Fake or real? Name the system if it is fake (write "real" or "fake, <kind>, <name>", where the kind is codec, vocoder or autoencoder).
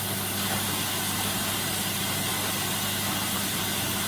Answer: real